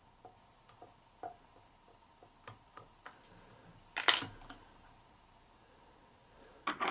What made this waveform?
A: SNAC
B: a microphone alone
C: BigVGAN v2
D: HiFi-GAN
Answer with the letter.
B